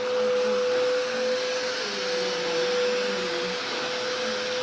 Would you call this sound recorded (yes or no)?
yes